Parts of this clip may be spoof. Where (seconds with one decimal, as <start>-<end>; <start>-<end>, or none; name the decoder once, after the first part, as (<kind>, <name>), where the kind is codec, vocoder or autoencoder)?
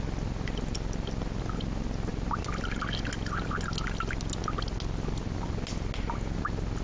none